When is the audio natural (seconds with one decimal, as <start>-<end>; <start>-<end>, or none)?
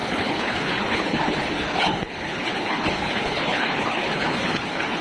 none